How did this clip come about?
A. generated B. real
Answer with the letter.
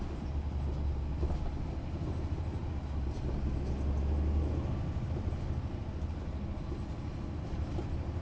B